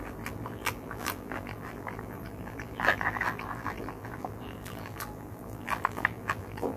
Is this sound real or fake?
fake